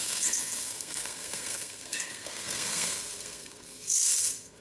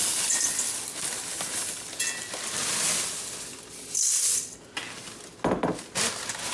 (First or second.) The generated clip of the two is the first